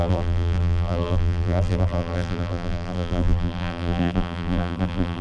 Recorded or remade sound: remade